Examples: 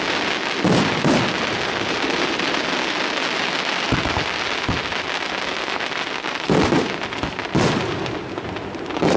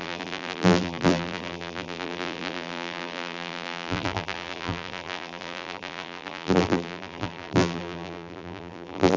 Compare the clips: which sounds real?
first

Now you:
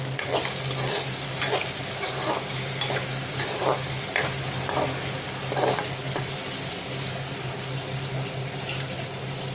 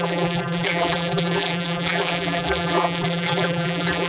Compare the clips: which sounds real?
first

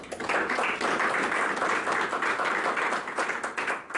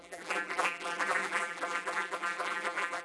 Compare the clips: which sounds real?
first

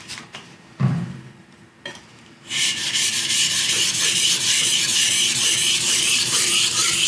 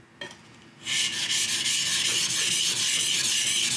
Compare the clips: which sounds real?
second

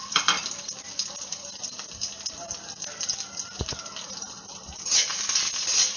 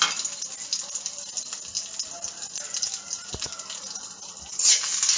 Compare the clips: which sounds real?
second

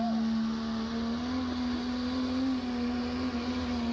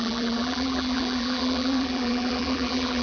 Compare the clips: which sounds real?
first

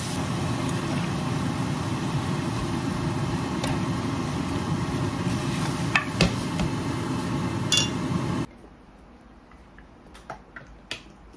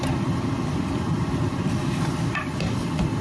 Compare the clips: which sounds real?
first